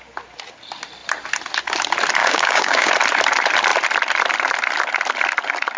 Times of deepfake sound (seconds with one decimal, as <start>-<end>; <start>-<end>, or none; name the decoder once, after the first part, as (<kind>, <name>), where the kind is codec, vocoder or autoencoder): 2.2-2.9 (codec, DAC)